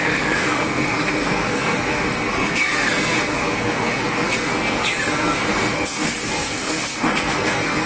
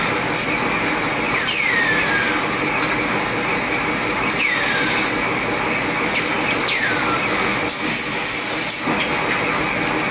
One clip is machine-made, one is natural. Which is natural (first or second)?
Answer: second